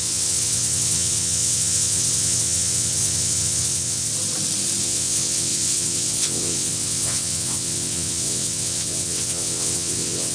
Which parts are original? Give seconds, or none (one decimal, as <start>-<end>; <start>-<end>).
4.1-4.8